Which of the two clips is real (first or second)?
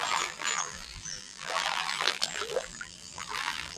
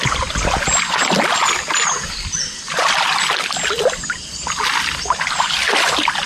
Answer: second